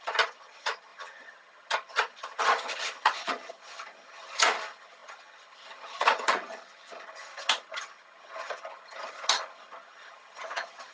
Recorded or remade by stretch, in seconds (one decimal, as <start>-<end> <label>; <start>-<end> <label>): 0.0-10.9 remade